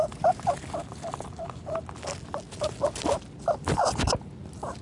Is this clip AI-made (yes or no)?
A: no